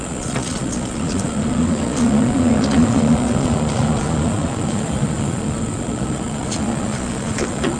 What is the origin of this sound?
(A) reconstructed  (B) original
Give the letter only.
A